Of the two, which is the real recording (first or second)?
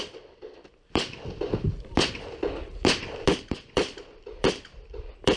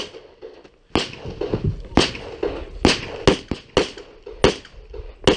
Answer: second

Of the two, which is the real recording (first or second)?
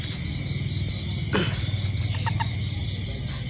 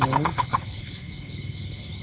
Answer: first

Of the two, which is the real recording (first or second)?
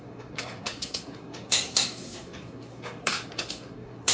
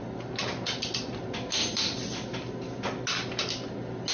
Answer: second